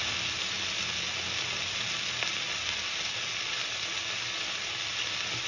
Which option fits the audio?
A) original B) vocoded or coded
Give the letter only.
A